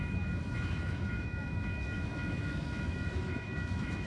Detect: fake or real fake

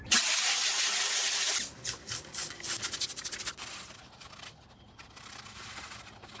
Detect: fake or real real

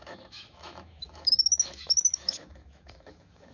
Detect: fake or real fake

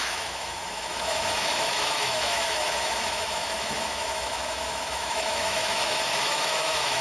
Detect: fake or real fake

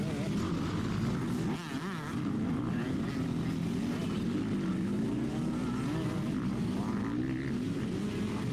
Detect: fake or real real